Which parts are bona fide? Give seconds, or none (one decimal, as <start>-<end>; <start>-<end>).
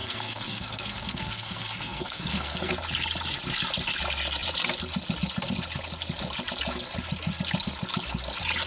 2.7-8.7